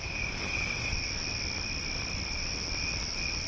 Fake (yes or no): yes